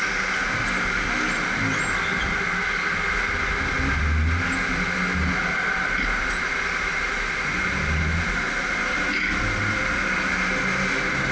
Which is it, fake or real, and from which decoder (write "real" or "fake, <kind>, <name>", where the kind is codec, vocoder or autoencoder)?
real